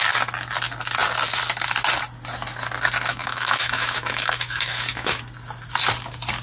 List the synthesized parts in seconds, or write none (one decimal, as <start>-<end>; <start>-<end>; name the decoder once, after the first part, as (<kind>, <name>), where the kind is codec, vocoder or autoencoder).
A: 3.1-5.2 (autoencoder, DAC-VAE)